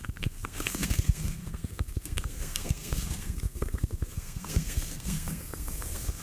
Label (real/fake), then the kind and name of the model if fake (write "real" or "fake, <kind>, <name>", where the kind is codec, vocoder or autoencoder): fake, codec, SNAC